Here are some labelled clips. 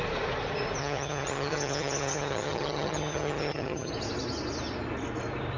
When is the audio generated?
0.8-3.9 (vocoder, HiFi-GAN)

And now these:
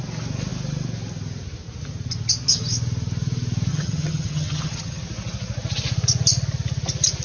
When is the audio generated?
3.7-5.0 (vocoder, HiFi-GAN)

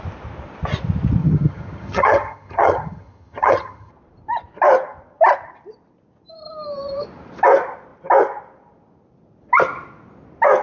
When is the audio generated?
1.2-3.9 (vocoder, HiFi-GAN)

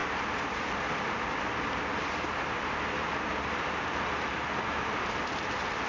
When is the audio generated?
none